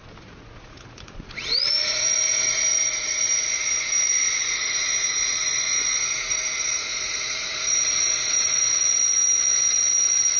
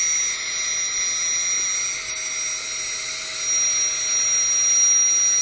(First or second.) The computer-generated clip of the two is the first